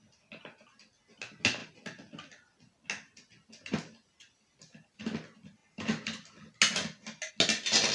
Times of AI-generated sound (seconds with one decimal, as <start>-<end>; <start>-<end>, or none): none